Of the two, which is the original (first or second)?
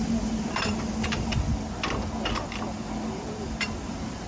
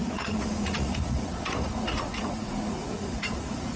first